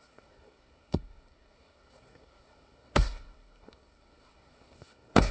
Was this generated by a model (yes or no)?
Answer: yes